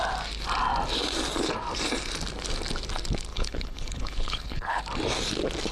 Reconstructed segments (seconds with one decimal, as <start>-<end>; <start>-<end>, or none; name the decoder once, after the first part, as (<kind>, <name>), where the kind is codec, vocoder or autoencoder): 3.3-4.8 (codec, HILCodec)